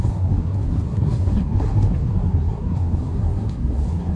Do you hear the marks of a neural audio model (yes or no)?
yes